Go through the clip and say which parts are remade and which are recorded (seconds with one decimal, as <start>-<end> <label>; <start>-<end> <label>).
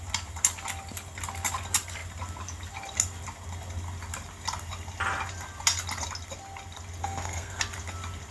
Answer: 0.0-7.0 recorded; 7.0-7.6 remade; 7.6-8.3 recorded